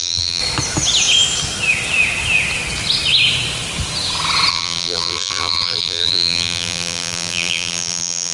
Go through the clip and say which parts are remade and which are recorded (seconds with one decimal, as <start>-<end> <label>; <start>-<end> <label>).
0.0-0.4 remade; 0.4-4.5 recorded; 4.5-8.3 remade